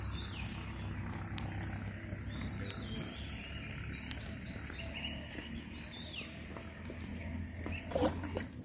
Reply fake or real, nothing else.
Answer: real